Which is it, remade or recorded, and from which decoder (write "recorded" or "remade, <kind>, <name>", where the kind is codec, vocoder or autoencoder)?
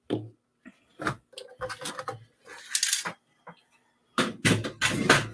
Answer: recorded